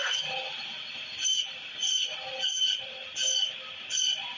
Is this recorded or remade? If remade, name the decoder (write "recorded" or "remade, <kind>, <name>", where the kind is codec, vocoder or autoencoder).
recorded